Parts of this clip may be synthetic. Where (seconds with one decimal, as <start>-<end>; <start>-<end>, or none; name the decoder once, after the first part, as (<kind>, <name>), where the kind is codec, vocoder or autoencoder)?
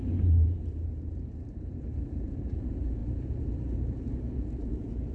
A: 0.0-5.1 (vocoder, BigVGAN v2)